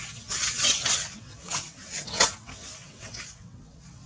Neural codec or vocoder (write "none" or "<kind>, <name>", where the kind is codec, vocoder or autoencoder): vocoder, WaveNeXt